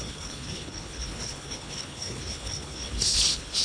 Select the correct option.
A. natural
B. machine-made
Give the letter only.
B